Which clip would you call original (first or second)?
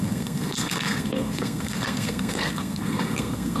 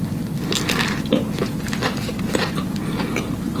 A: second